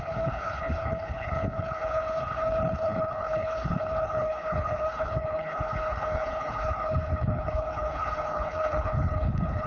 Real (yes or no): no